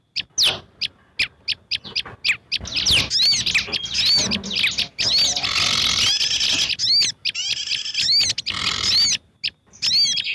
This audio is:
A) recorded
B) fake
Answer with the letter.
A